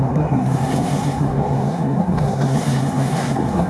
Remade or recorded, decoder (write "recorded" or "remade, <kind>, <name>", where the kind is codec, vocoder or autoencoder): remade, codec, SNAC